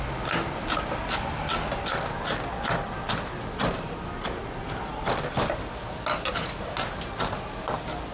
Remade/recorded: recorded